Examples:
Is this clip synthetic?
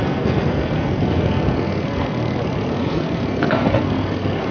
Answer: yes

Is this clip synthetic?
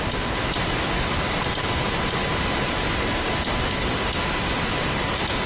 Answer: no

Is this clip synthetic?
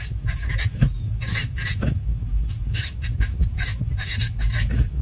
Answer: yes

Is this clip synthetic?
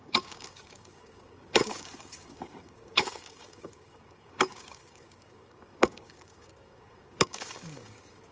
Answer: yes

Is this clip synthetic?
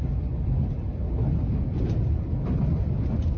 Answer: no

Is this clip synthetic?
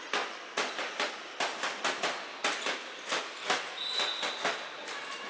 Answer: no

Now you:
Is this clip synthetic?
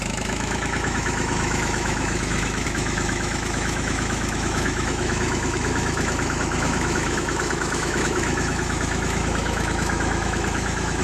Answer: yes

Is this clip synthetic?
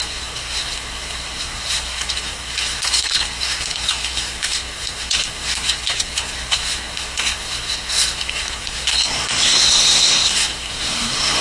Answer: yes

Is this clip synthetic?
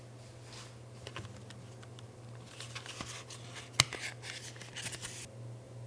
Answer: no